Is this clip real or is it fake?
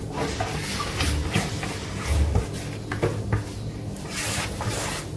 real